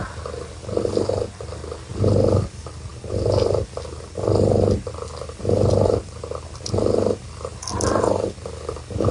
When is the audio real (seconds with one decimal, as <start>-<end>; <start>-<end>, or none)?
0.0-9.1